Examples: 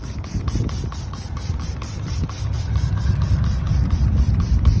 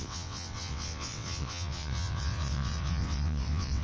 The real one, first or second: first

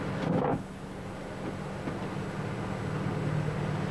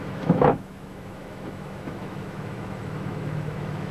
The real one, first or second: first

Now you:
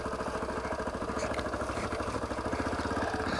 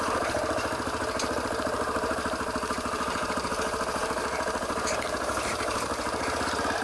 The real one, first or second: first